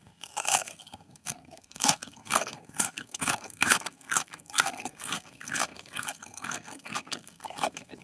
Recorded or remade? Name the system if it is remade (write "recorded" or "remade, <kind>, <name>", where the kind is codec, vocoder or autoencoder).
remade, codec, SNAC